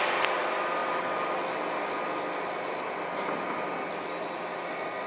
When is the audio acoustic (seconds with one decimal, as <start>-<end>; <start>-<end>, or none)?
0.0-5.1